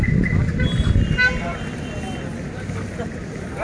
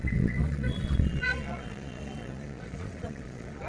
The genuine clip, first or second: first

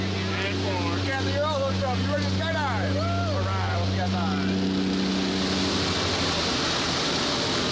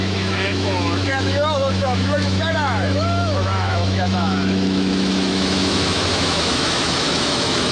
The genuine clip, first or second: first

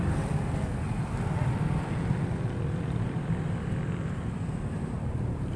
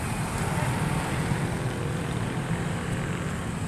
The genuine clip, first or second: second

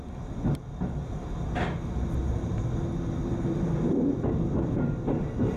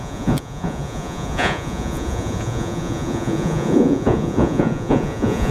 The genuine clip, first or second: first